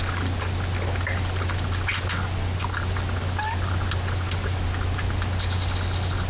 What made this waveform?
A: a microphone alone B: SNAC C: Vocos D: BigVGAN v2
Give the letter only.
A